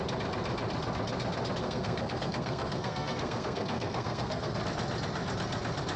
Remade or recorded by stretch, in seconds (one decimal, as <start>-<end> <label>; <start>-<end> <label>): 0.0-1.6 recorded; 1.6-4.6 remade; 4.6-6.0 recorded